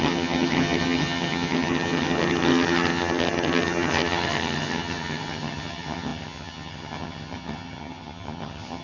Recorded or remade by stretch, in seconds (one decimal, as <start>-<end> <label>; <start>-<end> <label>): 0.0-8.8 remade